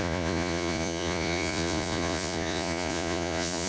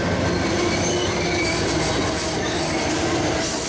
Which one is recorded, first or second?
second